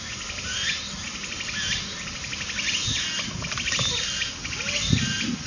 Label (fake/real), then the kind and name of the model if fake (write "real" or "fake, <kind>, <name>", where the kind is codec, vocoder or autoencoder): real